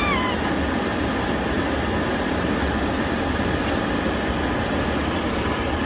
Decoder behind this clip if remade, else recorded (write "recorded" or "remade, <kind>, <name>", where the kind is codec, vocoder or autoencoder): recorded